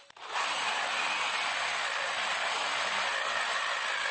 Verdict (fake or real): real